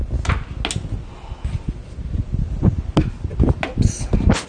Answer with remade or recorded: recorded